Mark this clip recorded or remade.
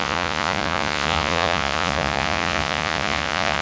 remade